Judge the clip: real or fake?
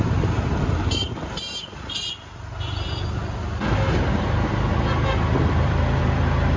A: real